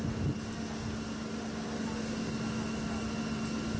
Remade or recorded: recorded